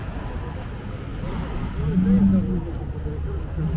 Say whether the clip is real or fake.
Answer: real